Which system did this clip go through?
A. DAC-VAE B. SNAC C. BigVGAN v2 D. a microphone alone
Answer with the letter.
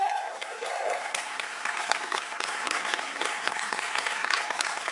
B